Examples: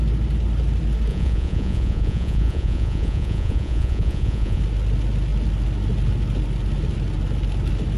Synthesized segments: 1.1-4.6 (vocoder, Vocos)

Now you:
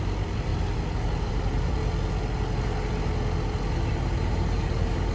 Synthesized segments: 0.0-0.5 (vocoder, BigVGAN v2); 1.3-1.8; 3.9-5.1

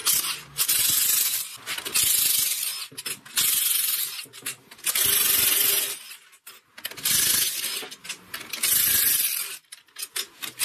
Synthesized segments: none

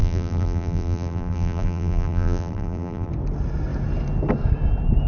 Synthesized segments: 0.0-3.1 (vocoder, BigVGAN v2)

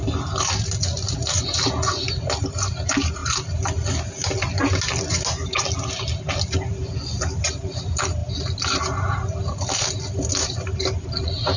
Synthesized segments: none

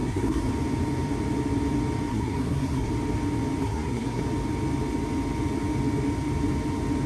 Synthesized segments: 0.0-0.5 (codec, SNAC); 2.1-2.9; 3.6-4.2